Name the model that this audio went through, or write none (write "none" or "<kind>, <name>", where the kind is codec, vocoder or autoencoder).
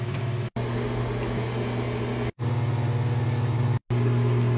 none